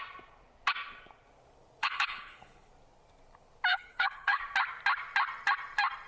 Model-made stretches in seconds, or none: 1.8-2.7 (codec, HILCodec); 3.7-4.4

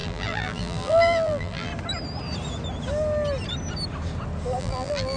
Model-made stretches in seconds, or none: 0.0-1.7 (vocoder, BigVGAN v2); 4.6-5.2

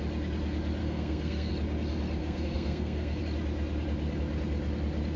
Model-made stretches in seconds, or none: 0.8-1.5 (codec, SNAC); 2.2-3.2

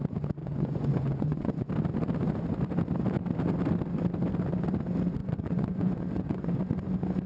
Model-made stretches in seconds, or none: 0.4-1.7 (vocoder, Vocos); 5.2-6.6

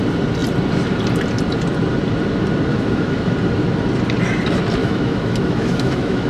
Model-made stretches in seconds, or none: 2.7-3.3 (autoencoder, DAC-VAE); 4.8-6.3

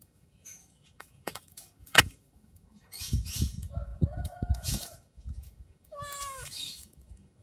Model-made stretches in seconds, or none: 0.0-7.4 (autoencoder, DAC-VAE)

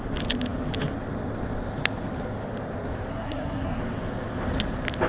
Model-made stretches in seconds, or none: 3.1-3.8 (codec, SNAC)

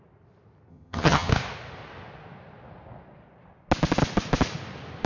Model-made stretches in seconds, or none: 0.7-1.3 (vocoder, HiFi-GAN)